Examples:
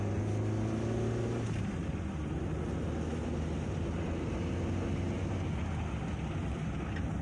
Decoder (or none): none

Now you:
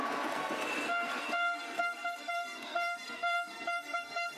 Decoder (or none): codec, SNAC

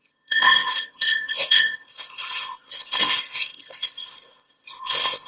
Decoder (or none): codec, ZipCodec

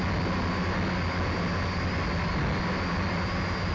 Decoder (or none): none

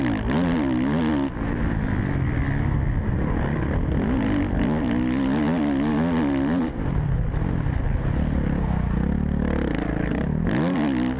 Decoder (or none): none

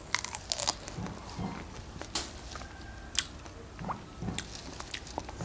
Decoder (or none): none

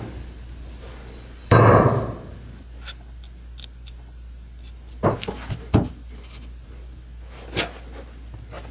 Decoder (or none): none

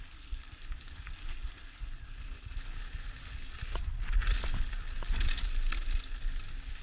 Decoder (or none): none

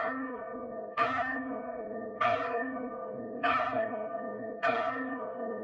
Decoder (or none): codec, SNAC